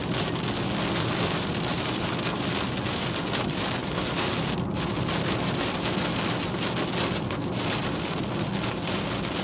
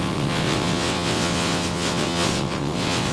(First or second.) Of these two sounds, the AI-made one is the second